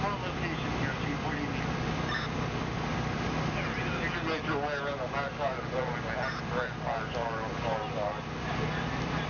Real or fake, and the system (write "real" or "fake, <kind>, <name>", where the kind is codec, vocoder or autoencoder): real